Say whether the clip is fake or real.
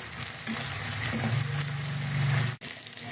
real